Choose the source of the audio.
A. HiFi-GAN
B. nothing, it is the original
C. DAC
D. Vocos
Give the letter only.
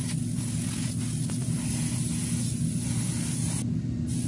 B